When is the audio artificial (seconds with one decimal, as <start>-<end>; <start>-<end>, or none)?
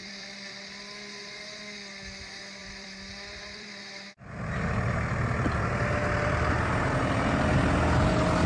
0.0-0.6; 2.6-3.8; 6.0-6.5